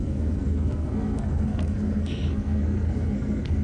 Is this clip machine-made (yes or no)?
yes